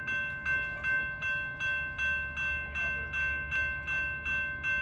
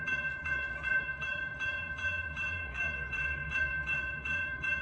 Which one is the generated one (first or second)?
second